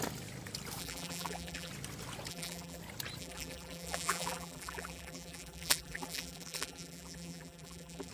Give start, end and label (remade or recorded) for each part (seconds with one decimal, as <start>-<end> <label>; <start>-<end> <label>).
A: 0.0-0.8 recorded; 0.8-1.7 remade; 1.7-2.3 recorded; 2.3-2.8 remade; 2.8-3.2 recorded; 3.2-8.1 remade